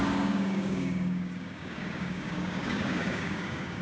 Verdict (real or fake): fake